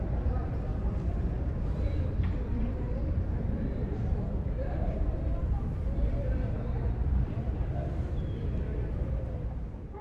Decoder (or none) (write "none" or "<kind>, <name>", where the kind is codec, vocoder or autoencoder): vocoder, BigVGAN v2